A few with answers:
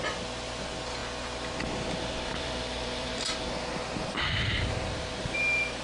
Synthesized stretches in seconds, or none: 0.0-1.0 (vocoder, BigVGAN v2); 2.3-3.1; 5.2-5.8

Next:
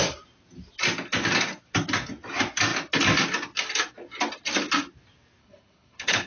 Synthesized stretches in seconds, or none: 5.4-6.3 (codec, HILCodec)